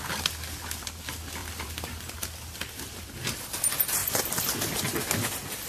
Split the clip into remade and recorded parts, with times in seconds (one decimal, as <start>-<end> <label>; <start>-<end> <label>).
0.0-1.4 recorded; 1.4-3.6 remade; 3.6-4.0 recorded; 4.0-4.8 remade; 4.8-5.7 recorded